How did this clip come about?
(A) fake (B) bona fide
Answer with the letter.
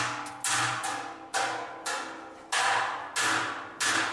B